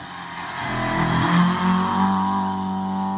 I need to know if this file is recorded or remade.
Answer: recorded